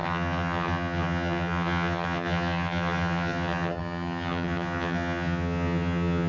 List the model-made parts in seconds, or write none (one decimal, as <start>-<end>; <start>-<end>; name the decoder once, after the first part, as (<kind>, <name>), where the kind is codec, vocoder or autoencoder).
0.0-6.3 (vocoder, HiFi-GAN)